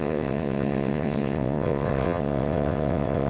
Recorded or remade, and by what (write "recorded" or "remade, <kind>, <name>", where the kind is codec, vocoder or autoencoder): remade, vocoder, WaveNeXt